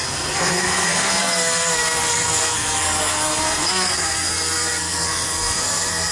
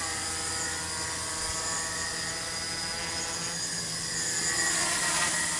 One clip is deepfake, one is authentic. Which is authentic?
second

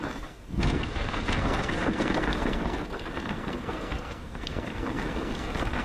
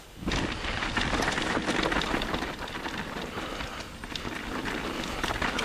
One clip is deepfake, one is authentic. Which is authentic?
second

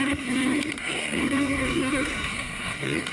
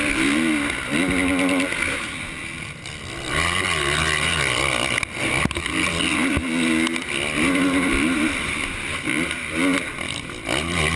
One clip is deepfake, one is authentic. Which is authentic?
second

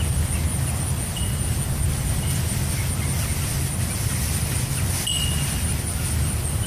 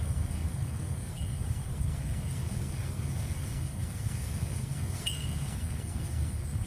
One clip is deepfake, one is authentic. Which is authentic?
first